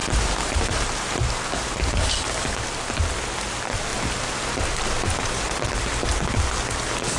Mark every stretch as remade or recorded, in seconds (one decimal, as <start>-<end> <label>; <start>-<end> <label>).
0.0-1.7 remade; 1.7-7.2 recorded